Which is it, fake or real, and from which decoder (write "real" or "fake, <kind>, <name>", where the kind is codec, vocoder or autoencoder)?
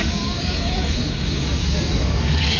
fake, codec, DAC